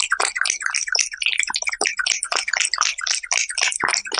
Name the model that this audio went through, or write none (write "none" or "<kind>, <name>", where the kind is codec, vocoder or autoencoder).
none